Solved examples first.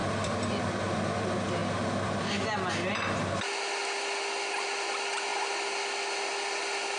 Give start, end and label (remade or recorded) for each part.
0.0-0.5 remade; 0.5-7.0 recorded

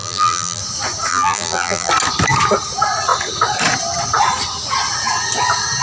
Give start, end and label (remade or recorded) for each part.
0.0-0.6 remade; 0.6-1.1 recorded; 1.1-1.9 remade; 1.9-5.8 recorded

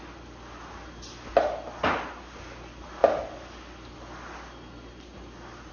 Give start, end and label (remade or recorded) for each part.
0.0-5.7 recorded

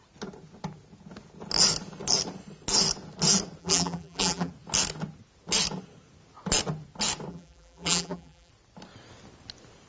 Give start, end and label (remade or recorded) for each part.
0.0-3.6 recorded; 3.6-4.5 remade; 4.5-7.3 recorded; 7.3-8.5 remade; 8.5-9.9 recorded

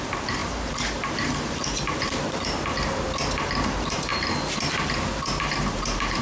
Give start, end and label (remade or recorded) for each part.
0.0-4.1 remade; 4.1-5.4 recorded; 5.4-6.2 remade

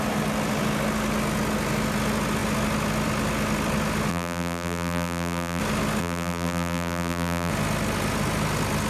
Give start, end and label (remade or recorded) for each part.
0.0-4.1 recorded; 4.1-5.6 remade; 5.6-6.0 recorded; 6.0-7.5 remade; 7.5-8.9 recorded